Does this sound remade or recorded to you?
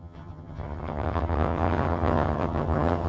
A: remade